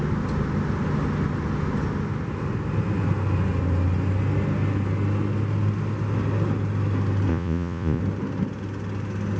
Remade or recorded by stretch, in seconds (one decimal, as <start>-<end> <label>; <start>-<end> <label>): 0.0-7.3 recorded; 7.3-8.0 remade; 8.0-9.4 recorded